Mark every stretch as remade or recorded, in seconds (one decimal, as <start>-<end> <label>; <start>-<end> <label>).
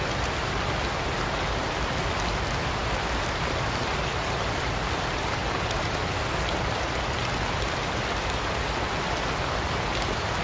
0.0-10.4 recorded